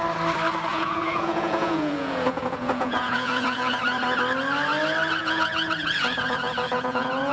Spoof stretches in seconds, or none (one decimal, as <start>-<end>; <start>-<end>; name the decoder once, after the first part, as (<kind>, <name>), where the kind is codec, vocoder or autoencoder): 0.7-3.8 (vocoder, Vocos); 5.2-7.3